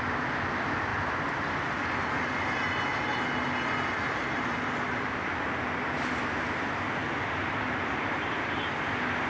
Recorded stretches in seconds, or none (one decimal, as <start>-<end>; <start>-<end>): 0.0-7.0; 8.1-9.3